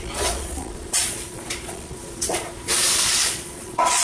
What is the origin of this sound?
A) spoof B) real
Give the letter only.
A